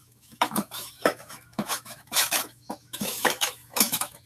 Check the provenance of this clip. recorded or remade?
remade